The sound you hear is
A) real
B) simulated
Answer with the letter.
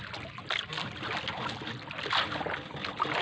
A